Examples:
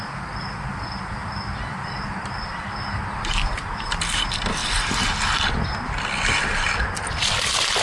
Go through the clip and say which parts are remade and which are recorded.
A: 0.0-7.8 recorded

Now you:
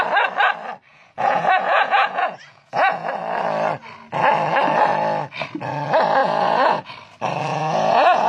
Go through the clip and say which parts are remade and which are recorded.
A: 0.0-0.9 recorded; 0.9-3.1 remade; 3.1-6.2 recorded; 6.2-6.9 remade; 6.9-7.5 recorded; 7.5-8.3 remade

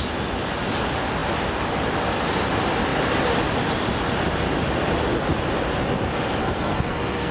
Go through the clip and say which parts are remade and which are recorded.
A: 0.0-6.4 recorded; 6.4-7.3 remade

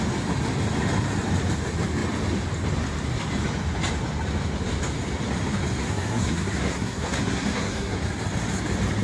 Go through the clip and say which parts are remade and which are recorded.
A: 0.0-5.8 recorded; 5.8-8.0 remade; 8.0-9.0 recorded

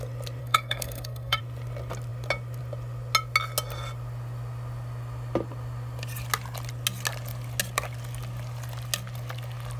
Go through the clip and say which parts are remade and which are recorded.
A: 0.0-0.4 recorded; 0.4-1.4 remade; 1.4-9.8 recorded

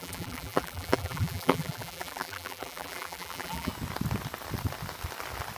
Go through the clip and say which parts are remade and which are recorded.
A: 0.0-3.7 remade; 3.7-5.6 recorded